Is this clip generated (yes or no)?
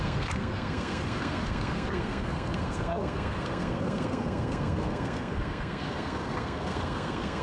yes